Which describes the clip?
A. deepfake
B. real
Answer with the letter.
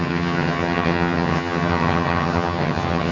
A